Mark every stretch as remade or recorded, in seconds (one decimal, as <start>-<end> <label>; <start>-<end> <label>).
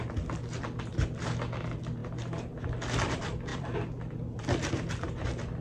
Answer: 0.0-3.5 recorded; 3.5-4.7 remade; 4.7-5.6 recorded